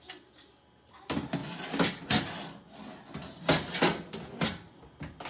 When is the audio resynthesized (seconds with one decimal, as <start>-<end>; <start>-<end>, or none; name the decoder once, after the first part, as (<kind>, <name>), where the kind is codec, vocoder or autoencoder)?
none